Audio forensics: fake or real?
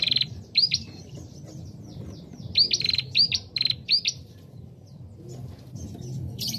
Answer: real